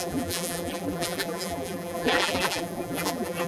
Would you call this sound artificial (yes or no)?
yes